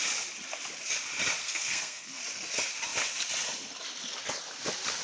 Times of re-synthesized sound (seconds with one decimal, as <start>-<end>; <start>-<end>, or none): 1.4-2.2